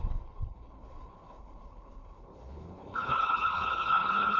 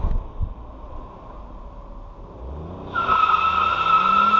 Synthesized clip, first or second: first